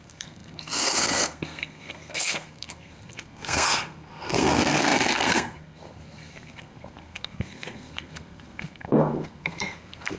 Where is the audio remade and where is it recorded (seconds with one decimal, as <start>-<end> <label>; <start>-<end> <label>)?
0.0-10.2 remade